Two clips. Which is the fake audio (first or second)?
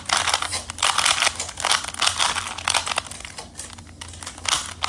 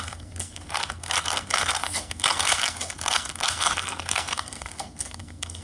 second